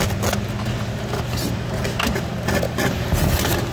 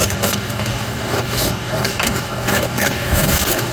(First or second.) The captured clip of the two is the first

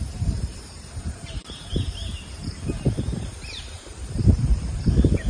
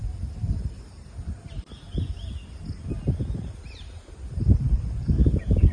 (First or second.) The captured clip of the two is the second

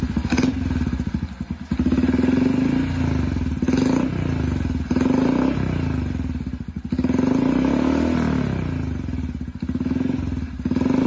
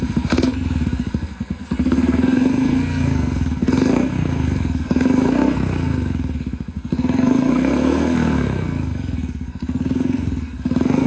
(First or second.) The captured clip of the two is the first